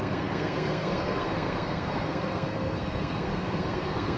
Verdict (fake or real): fake